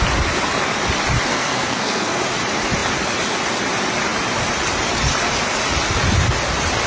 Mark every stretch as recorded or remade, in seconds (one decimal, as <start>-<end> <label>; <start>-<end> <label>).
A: 0.0-1.3 recorded; 1.3-2.2 remade; 2.2-6.9 recorded